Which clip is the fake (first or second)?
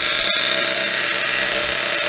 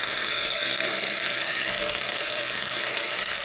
second